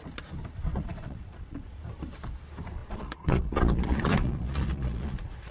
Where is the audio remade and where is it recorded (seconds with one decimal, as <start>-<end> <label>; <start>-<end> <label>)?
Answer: 0.0-0.7 recorded; 0.7-1.8 remade; 1.8-2.8 recorded; 2.8-5.5 remade